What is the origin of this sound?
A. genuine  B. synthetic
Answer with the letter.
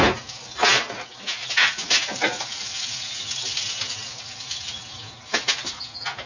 A